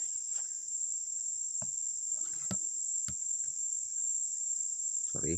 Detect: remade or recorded recorded